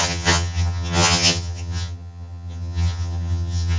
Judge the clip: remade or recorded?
remade